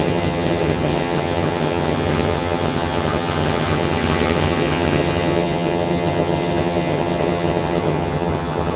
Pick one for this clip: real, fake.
fake